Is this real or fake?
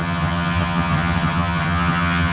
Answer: fake